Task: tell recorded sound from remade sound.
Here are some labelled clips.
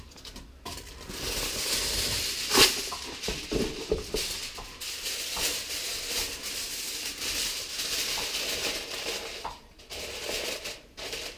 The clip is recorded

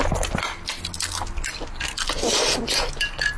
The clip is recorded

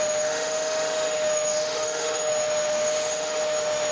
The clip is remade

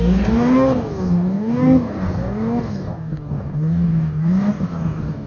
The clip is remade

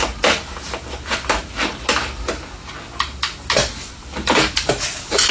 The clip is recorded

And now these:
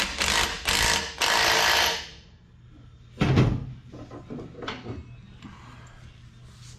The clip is recorded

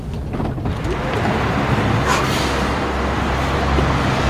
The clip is recorded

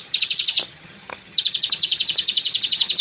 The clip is remade